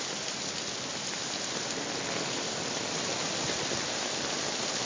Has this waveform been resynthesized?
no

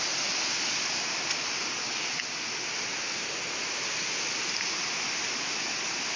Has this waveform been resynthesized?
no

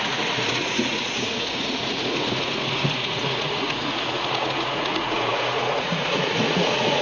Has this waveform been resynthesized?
yes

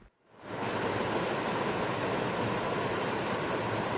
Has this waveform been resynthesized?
no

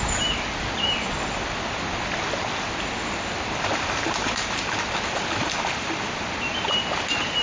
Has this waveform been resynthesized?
no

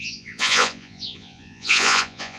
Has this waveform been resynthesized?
yes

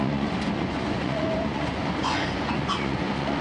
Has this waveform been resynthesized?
yes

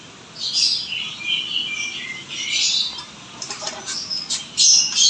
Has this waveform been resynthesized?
no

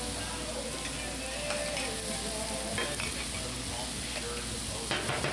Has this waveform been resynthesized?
no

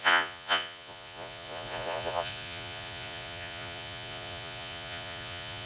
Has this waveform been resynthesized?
yes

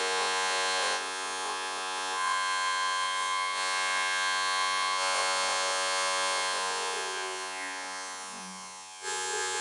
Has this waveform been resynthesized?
yes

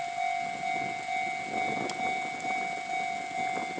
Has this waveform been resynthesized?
no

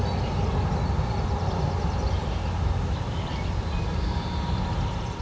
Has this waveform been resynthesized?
no